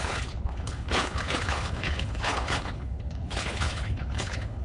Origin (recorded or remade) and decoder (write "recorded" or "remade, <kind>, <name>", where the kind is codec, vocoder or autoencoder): remade, codec, HILCodec